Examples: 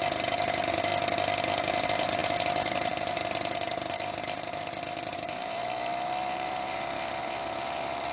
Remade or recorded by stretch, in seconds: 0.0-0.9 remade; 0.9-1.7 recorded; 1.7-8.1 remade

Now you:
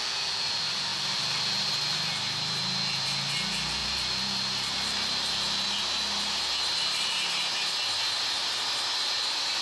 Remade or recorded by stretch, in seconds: 0.0-3.8 recorded; 3.8-5.3 remade; 5.3-6.7 recorded; 6.7-7.4 remade; 7.4-9.6 recorded